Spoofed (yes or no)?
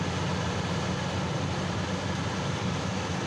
no